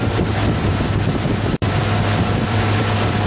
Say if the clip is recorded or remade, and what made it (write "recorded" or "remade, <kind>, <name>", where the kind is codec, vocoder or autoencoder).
remade, vocoder, BigVGAN v2